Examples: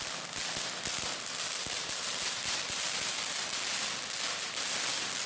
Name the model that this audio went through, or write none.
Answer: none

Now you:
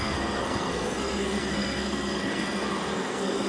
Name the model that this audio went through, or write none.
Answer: codec, SNAC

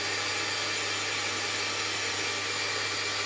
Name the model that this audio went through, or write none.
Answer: none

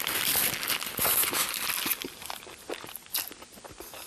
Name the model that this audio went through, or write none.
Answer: none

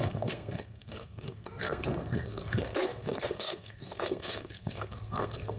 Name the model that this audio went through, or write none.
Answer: codec, SNAC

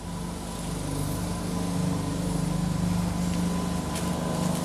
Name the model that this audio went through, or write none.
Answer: none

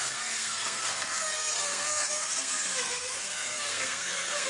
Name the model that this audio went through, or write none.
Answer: codec, SNAC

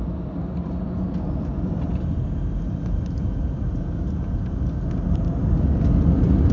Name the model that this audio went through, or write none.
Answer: none